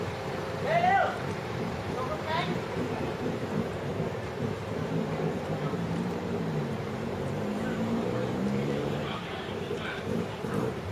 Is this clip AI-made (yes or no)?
yes